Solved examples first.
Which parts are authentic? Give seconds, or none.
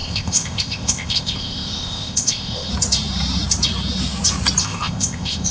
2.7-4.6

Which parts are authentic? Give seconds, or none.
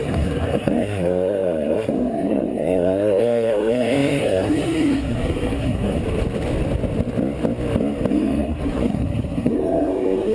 6.0-8.1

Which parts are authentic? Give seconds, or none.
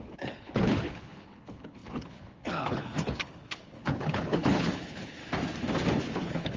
5.2-6.0